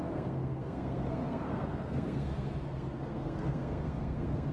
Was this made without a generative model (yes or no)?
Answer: no